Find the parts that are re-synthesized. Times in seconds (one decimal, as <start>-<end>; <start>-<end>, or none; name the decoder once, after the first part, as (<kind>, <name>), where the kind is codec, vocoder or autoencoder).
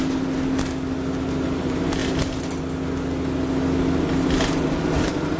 1.6-2.0 (vocoder, BigVGAN v2); 4.8-5.4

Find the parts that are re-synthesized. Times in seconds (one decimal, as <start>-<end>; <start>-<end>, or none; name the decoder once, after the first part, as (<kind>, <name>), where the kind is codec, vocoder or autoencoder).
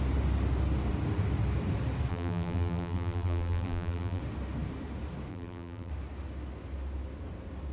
2.1-4.2 (vocoder, BigVGAN v2); 5.3-5.9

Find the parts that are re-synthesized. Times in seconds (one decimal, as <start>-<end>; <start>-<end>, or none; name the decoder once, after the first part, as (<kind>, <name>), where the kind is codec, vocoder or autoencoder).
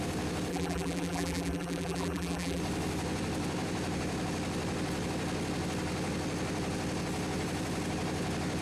0.5-2.6 (vocoder, BigVGAN v2)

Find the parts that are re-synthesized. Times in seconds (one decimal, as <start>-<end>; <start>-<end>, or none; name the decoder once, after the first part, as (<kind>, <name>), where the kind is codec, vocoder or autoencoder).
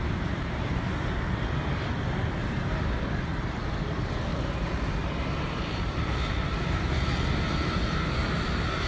0.0-1.9 (vocoder, BigVGAN v2); 2.4-4.3; 5.4-8.9